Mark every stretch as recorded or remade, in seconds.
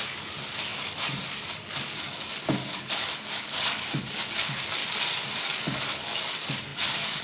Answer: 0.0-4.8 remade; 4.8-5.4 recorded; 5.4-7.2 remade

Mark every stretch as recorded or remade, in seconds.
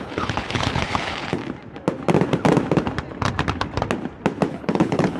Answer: 0.0-1.4 remade; 1.4-4.5 recorded; 4.5-5.2 remade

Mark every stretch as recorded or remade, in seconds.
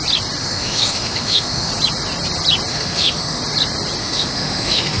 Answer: 0.0-0.4 recorded; 0.4-1.7 remade; 1.7-2.7 recorded; 2.7-3.4 remade; 3.4-4.0 recorded; 4.0-5.0 remade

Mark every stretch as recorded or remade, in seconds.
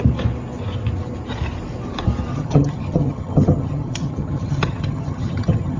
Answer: 0.0-2.3 recorded; 2.3-5.8 remade